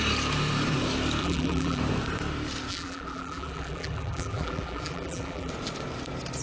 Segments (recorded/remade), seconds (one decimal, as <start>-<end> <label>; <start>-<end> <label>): 0.0-1.2 recorded; 1.2-1.8 remade; 1.8-2.7 recorded; 2.7-5.5 remade; 5.5-6.4 recorded